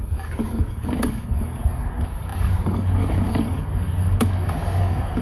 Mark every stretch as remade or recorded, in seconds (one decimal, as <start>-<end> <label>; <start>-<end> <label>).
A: 0.0-5.2 remade